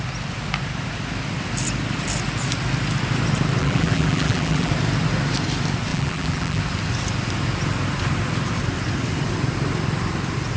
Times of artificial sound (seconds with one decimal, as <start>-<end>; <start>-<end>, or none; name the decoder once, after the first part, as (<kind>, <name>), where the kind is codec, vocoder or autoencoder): 3.6-4.7 (vocoder, BigVGAN v2); 5.9-6.6